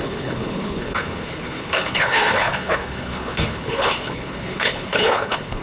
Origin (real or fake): fake